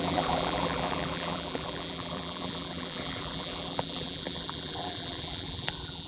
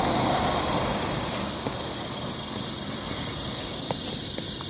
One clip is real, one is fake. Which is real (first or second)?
second